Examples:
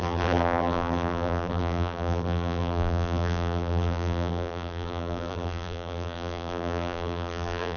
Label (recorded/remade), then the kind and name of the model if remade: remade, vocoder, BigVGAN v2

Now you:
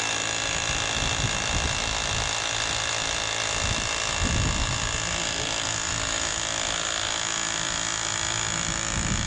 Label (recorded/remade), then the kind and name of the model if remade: recorded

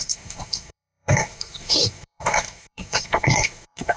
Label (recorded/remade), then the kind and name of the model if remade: remade, codec, SNAC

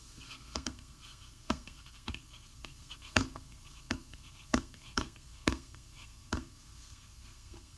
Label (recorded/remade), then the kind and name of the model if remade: remade, codec, SNAC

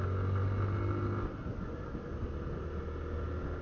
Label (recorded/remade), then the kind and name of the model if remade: recorded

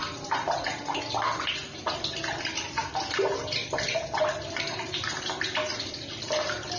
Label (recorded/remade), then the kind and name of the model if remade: recorded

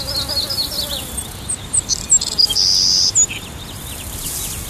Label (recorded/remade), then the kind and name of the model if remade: recorded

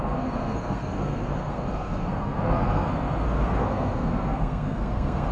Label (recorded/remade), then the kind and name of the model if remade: remade, codec, SNAC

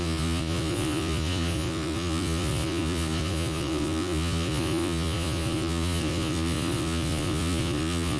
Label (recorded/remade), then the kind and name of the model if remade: remade, vocoder, Vocos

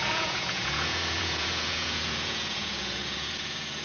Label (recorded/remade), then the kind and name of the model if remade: remade, vocoder, Vocos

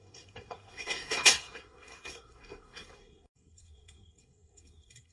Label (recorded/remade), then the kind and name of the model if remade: remade, codec, SNAC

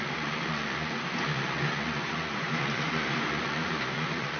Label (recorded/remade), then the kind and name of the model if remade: remade, vocoder, Vocos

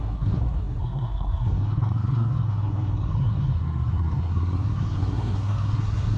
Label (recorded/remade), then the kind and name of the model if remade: remade, codec, SNAC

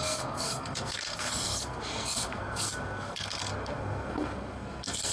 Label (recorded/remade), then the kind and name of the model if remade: remade, codec, SNAC